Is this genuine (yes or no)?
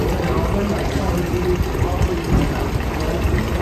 yes